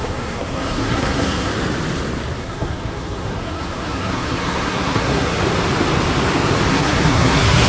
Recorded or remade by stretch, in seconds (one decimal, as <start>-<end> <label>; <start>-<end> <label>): 0.0-1.5 remade; 1.5-2.4 recorded; 2.4-5.4 remade; 5.4-6.7 recorded; 6.7-7.7 remade